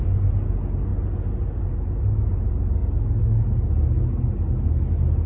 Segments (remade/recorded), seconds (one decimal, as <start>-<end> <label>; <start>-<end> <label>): 0.0-5.3 recorded